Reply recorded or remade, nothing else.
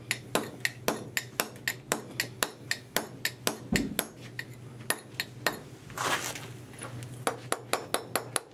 recorded